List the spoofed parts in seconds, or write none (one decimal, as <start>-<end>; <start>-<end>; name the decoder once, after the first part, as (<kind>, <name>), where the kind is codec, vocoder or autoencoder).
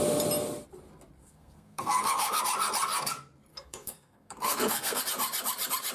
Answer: 1.2-2.4 (codec, SNAC); 3.5-5.0